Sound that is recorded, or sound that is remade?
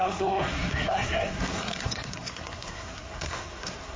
remade